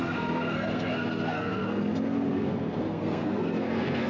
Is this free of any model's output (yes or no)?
no